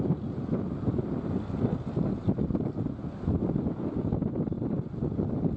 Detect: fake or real real